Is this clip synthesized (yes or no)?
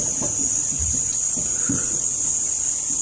yes